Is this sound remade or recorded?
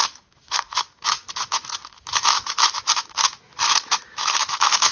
remade